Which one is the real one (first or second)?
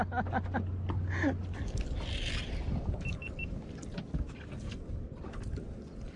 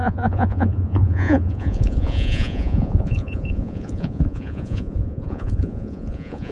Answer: first